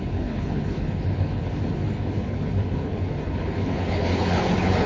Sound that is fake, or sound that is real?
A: fake